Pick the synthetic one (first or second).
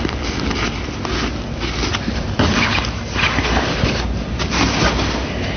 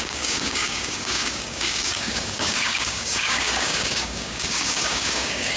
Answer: second